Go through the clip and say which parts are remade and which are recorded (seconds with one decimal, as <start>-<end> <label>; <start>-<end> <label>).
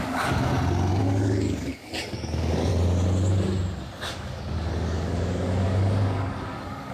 0.0-0.5 remade; 0.5-1.0 recorded; 1.0-2.7 remade; 2.7-4.1 recorded; 4.1-6.9 remade